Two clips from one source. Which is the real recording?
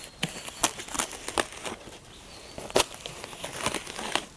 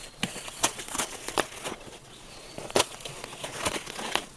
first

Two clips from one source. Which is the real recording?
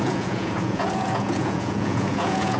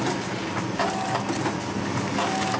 second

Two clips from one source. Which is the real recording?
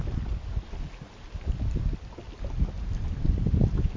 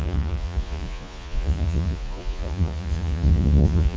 first